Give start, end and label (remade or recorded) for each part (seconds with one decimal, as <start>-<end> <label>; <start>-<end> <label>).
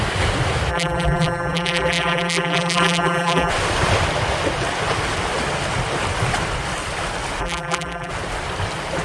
0.0-0.7 recorded; 0.7-3.5 remade; 3.5-7.4 recorded; 7.4-8.1 remade; 8.1-9.0 recorded